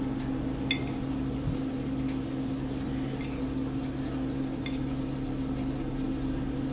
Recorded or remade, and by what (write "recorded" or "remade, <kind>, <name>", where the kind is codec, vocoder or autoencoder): recorded